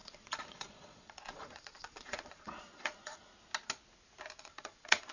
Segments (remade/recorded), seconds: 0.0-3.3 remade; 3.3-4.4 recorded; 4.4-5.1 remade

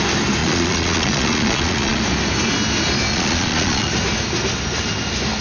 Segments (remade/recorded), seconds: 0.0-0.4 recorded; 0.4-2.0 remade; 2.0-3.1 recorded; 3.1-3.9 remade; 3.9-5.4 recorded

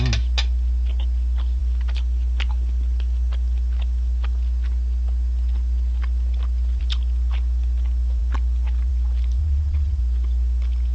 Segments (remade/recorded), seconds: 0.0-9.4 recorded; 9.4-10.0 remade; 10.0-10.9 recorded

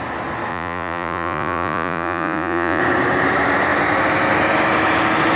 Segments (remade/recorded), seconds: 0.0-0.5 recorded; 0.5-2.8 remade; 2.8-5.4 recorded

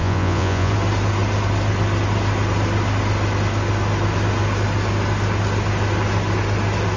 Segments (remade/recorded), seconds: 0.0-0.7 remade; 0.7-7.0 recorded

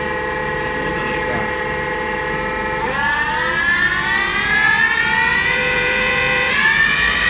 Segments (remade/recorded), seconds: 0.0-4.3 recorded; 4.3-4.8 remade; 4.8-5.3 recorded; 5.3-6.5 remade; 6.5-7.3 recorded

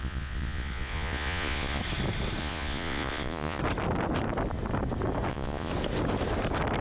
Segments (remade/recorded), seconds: 0.0-1.8 remade; 1.8-2.4 recorded; 2.4-3.6 remade; 3.6-5.3 recorded; 5.3-5.7 remade; 5.7-6.8 recorded